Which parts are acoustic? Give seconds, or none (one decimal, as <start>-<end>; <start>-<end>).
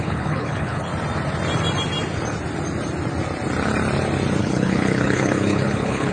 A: 0.9-4.4